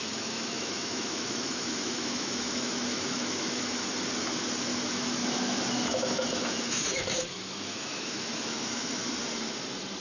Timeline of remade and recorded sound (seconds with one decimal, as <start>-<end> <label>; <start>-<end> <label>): 0.0-3.8 remade; 3.8-4.6 recorded; 4.6-9.0 remade; 9.0-10.0 recorded